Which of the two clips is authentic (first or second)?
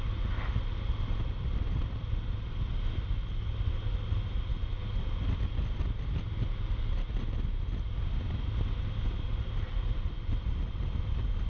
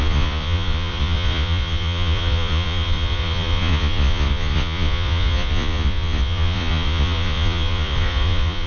first